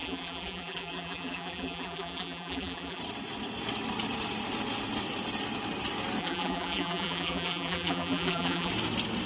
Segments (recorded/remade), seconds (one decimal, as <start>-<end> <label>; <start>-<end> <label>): 0.0-3.0 remade; 3.0-6.2 recorded; 6.2-8.7 remade; 8.7-9.3 recorded